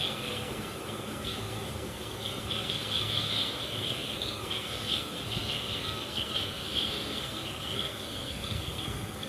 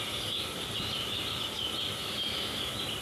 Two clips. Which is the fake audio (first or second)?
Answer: first